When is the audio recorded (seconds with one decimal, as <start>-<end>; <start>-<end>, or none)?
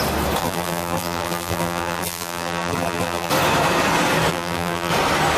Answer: 0.0-0.4; 3.3-4.3; 4.9-5.4